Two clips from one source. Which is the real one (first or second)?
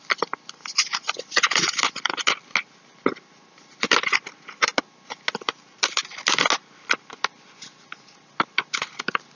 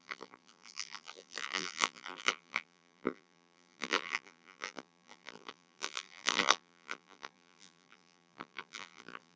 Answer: first